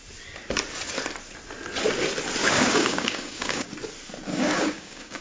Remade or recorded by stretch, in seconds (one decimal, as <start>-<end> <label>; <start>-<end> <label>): 0.0-2.4 recorded; 2.4-3.7 remade; 3.7-4.3 recorded; 4.3-5.2 remade